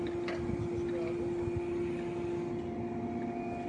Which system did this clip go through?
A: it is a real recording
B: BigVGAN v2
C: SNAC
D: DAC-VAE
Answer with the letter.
A